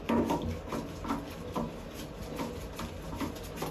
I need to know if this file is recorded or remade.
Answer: recorded